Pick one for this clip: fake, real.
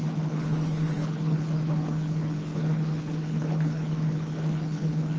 fake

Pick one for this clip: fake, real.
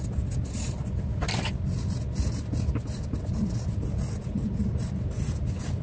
real